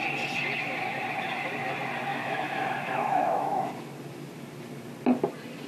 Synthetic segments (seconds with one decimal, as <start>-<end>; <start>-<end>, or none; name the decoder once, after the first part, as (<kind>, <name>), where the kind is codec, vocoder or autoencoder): 2.1-3.7 (autoencoder, DAC-VAE)